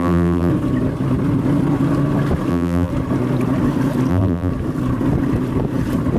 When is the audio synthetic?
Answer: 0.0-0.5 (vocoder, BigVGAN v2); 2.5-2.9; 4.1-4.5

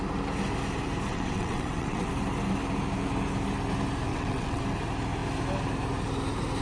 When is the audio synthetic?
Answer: 1.1-2.1 (vocoder, WaveNeXt); 4.1-4.6

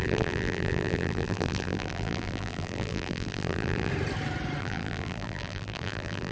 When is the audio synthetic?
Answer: 0.0-3.9 (vocoder, BigVGAN v2); 4.6-6.3